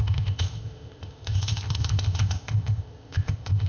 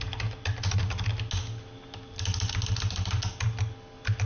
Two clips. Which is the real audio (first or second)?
second